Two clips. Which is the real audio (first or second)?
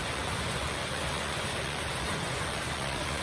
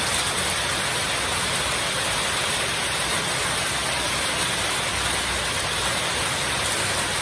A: second